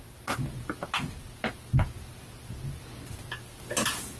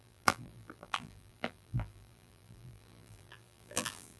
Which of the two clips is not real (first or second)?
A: second